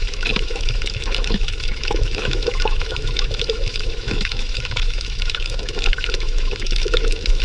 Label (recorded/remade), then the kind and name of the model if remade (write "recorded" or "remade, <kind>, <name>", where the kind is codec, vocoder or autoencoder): remade, autoencoder, DAC-VAE